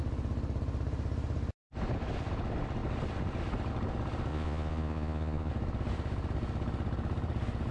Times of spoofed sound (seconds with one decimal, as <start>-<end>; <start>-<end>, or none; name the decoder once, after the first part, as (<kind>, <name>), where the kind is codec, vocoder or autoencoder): 4.3-5.5 (vocoder, Vocos)

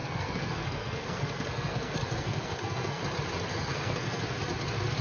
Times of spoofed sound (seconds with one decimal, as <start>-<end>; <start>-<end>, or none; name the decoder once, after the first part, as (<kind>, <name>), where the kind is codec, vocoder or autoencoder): 0.0-3.0 (codec, SNAC); 3.5-4.2

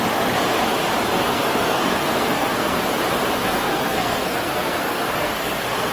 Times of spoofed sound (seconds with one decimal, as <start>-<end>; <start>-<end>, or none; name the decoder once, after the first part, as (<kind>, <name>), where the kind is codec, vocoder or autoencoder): 1.3-2.8 (codec, SNAC); 3.4-5.9

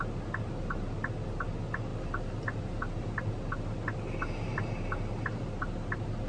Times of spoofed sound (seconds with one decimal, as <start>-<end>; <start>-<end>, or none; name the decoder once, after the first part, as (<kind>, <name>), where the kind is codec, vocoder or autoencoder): none

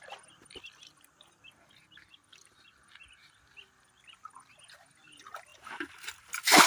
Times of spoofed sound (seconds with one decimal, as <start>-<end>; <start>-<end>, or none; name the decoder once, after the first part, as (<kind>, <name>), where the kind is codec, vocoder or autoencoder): none

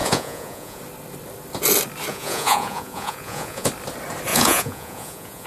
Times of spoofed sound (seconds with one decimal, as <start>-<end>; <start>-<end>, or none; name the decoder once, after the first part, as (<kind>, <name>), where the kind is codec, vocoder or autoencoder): 0.0-0.8 (vocoder, Vocos); 2.1-3.7; 4.3-5.5